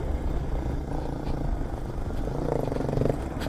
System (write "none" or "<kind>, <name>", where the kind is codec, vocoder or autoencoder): none